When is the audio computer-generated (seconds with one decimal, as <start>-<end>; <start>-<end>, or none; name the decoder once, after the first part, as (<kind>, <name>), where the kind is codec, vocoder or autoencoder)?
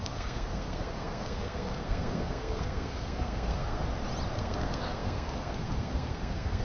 0.0-3.8 (codec, SNAC); 4.3-6.6